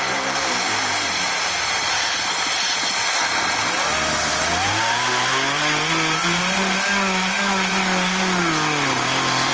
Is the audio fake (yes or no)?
no